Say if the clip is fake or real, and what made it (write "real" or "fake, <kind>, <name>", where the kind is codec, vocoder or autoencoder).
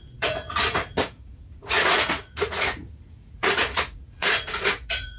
fake, vocoder, Vocos